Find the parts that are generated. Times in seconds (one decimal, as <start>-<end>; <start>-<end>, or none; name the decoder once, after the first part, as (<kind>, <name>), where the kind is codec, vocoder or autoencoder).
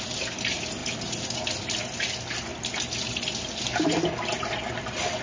none